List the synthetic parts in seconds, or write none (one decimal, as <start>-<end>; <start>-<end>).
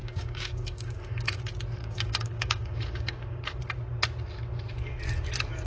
0.0-1.4; 1.8-3.6